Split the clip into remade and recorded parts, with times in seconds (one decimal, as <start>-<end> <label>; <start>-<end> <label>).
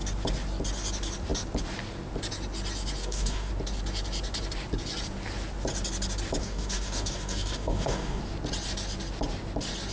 0.0-3.0 recorded; 3.0-3.5 remade; 3.5-6.4 recorded; 6.4-8.2 remade; 8.2-9.9 recorded